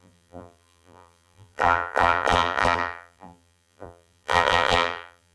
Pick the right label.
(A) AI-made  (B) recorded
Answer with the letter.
A